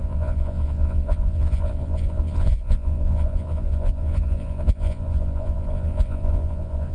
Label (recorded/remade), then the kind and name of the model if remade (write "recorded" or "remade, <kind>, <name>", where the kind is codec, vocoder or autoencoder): remade, vocoder, Vocos